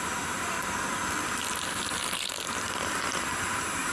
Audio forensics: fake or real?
real